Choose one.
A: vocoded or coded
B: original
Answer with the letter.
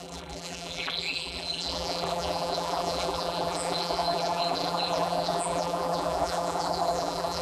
A